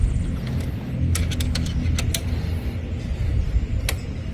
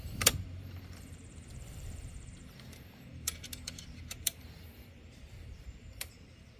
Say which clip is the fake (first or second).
second